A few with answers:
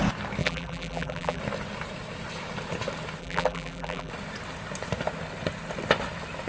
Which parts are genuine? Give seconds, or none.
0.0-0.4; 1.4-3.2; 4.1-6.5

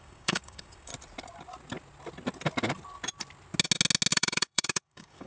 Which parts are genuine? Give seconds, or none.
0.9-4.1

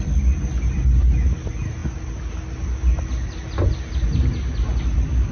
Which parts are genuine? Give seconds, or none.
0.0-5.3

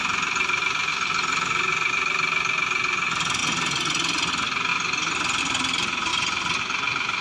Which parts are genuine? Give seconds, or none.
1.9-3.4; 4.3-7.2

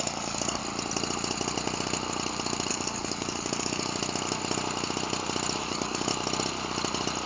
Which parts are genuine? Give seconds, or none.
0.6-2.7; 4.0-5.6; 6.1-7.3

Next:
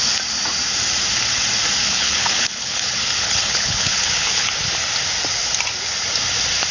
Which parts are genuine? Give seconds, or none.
0.0-1.8; 4.5-6.7

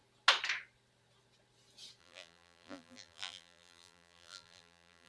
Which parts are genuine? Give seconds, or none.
0.0-2.0